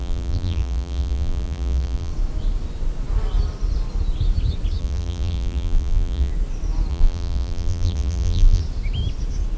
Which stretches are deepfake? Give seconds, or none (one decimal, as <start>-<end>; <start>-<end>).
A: 0.0-2.1; 4.8-6.3; 6.9-8.6